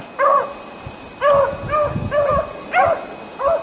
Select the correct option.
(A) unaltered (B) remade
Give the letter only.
A